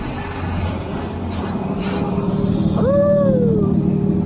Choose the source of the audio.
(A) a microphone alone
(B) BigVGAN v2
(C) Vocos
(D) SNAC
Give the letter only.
A